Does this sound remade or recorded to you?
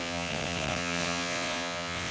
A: remade